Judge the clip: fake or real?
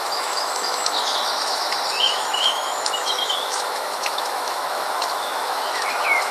fake